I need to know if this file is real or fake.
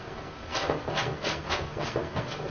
fake